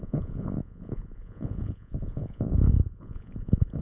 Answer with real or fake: fake